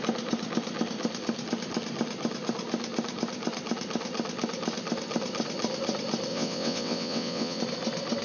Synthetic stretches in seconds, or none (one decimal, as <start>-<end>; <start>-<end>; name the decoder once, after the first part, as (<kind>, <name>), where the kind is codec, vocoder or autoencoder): 6.3-7.6 (vocoder, WaveNeXt)